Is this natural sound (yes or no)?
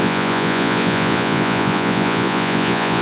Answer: no